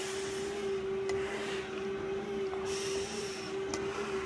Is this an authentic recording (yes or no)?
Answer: yes